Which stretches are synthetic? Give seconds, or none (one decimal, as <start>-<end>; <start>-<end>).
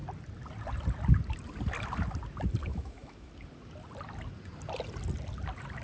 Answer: 2.7-3.3